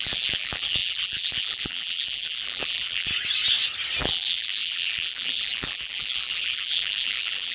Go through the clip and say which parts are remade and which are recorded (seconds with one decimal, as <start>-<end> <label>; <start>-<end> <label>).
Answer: 0.0-3.1 remade; 3.1-4.0 recorded; 4.0-7.5 remade